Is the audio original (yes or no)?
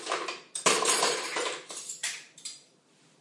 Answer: yes